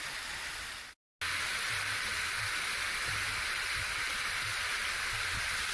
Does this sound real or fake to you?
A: real